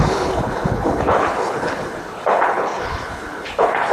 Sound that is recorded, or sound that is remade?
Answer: remade